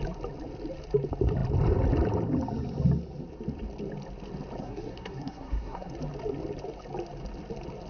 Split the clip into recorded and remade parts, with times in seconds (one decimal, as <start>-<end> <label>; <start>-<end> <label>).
0.0-4.6 recorded; 4.6-5.9 remade; 5.9-7.9 recorded